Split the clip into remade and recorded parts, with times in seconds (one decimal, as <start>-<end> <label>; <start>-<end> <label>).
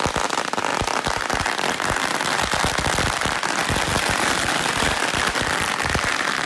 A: 0.0-6.5 recorded